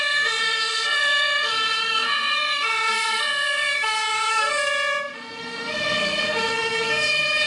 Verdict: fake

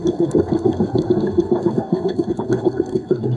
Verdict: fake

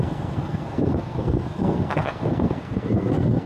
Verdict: fake